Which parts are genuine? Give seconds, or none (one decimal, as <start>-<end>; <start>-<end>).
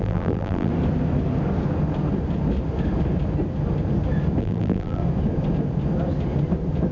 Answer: 0.7-4.4; 5.0-6.9